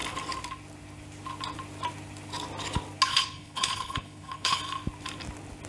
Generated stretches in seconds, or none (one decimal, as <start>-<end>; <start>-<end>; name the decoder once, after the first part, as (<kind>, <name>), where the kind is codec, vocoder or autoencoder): 3.1-4.6 (codec, HILCodec)